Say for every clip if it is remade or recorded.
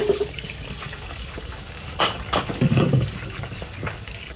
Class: remade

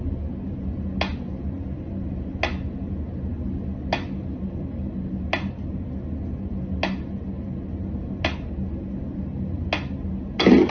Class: recorded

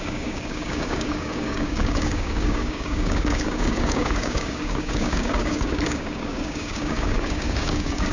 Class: remade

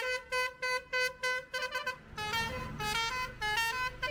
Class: recorded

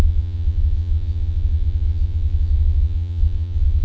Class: remade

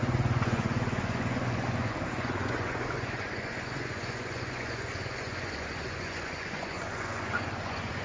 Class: remade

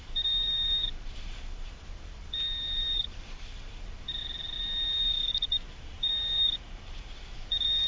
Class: remade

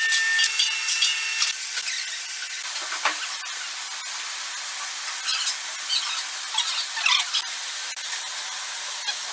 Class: recorded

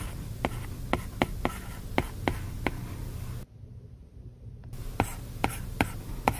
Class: recorded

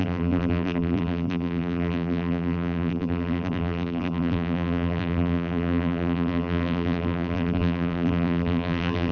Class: remade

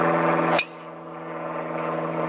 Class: recorded